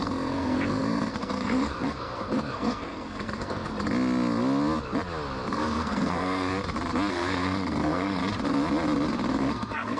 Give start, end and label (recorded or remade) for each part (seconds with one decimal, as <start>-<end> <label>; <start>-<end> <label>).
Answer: 0.0-3.7 remade; 3.7-5.5 recorded; 5.5-6.5 remade; 6.5-7.1 recorded; 7.1-8.2 remade; 8.2-9.3 recorded; 9.3-10.0 remade